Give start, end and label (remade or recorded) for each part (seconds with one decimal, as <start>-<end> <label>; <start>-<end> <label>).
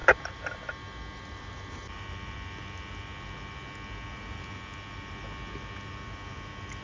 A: 0.0-6.8 recorded